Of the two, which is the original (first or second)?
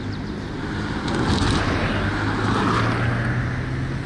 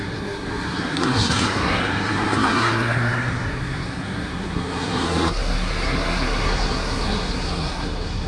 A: first